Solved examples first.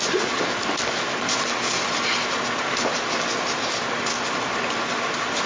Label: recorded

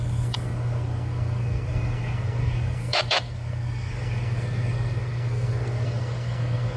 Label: remade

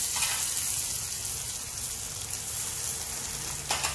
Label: recorded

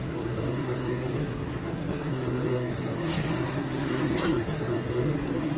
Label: remade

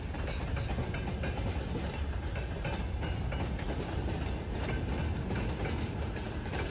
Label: recorded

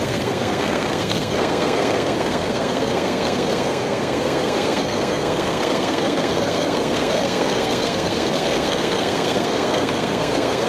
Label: remade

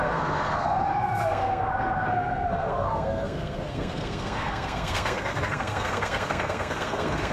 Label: remade